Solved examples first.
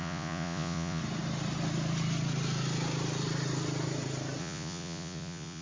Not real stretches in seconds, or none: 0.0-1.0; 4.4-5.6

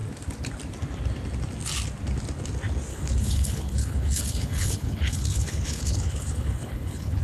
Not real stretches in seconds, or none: 2.9-7.2

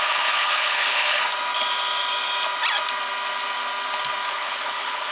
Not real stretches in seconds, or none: 0.0-1.2; 4.3-5.1

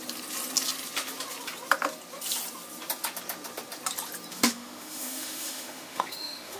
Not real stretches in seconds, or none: 4.3-6.6

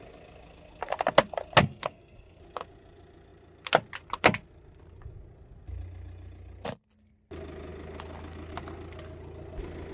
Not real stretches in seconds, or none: 1.6-2.4

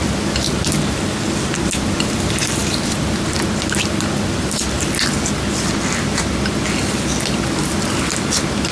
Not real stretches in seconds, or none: none

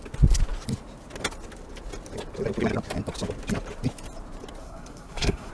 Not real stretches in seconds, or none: 4.6-5.5

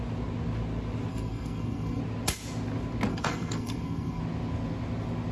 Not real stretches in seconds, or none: 1.1-2.0; 3.1-4.2